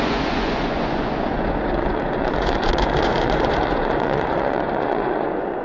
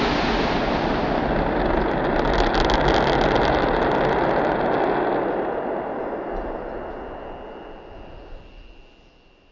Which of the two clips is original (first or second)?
second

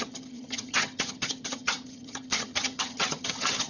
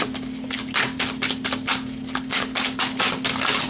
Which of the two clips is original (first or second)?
second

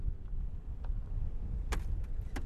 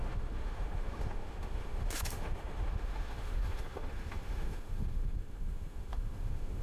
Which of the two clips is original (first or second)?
first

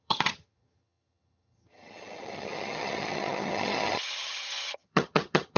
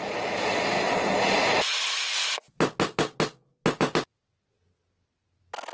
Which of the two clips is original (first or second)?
second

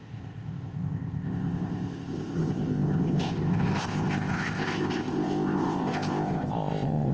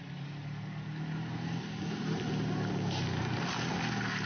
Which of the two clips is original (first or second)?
second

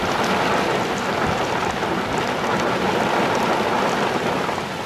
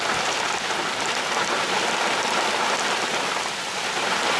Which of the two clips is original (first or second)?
first